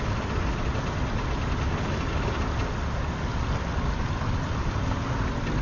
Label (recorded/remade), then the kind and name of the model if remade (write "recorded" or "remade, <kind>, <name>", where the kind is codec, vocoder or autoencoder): recorded